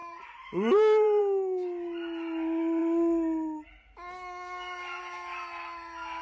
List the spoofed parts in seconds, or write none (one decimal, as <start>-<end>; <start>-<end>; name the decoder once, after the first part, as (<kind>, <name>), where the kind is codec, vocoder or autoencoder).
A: 0.0-1.2 (vocoder, BigVGAN v2)